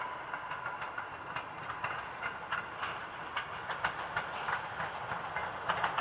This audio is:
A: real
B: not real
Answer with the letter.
A